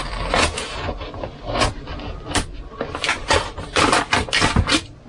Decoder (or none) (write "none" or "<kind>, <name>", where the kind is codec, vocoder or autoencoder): none